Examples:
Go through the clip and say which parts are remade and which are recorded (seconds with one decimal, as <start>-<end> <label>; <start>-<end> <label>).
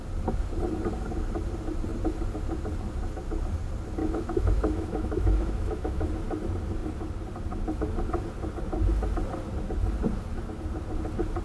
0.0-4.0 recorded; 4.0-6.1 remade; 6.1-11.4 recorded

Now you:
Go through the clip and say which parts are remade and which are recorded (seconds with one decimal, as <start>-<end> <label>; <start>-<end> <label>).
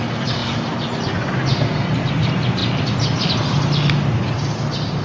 0.0-5.0 recorded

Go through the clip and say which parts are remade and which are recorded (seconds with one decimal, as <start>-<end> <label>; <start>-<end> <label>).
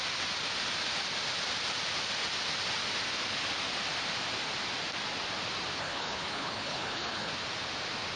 0.0-5.8 recorded; 5.8-7.3 remade; 7.3-8.2 recorded